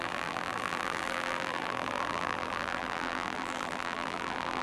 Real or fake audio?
fake